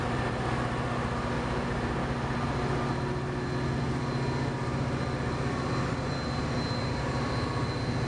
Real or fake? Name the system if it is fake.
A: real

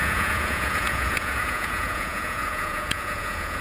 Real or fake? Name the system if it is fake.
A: fake, vocoder, Vocos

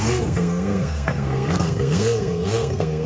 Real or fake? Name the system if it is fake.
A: fake, codec, SNAC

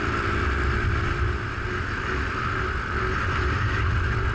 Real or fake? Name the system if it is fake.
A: fake, vocoder, BigVGAN v2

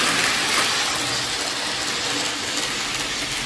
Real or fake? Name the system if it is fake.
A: real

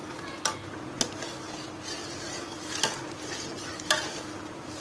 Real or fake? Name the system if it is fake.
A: real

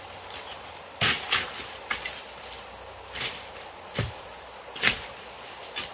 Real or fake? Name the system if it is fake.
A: real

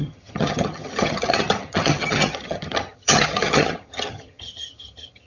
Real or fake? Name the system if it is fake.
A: fake, vocoder, HiFi-GAN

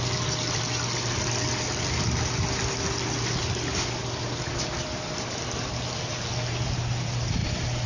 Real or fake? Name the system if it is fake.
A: real